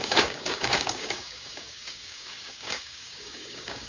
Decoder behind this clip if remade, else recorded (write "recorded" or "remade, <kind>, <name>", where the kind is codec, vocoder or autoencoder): remade, codec, DAC